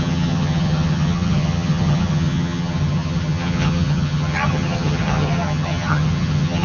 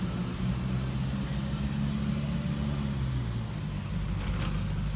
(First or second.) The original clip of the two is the second